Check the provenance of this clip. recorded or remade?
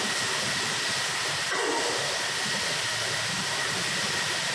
recorded